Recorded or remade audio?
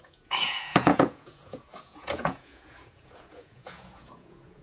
remade